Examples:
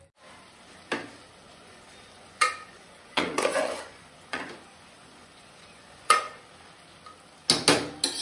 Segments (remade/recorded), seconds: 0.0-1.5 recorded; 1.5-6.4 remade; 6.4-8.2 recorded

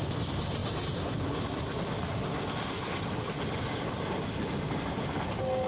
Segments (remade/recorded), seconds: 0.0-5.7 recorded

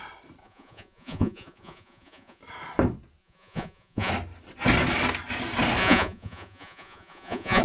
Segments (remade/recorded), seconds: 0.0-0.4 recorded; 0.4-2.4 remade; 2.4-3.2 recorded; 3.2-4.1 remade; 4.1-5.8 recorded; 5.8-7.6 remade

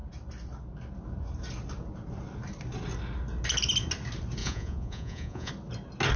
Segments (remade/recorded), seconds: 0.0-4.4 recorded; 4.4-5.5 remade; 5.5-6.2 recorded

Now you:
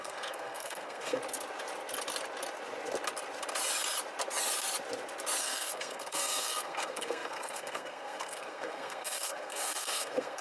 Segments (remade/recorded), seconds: 0.0-1.2 remade; 1.2-5.4 recorded; 5.4-10.4 remade